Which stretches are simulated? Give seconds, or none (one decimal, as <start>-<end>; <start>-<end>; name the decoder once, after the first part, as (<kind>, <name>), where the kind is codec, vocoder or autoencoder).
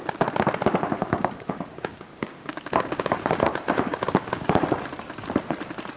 1.0-4.6 (codec, DAC)